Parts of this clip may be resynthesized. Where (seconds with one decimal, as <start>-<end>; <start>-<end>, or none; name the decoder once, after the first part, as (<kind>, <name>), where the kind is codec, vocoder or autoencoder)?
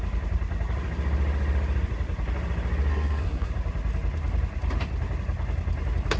2.9-3.5 (codec, SNAC)